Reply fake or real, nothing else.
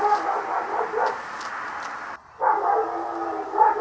real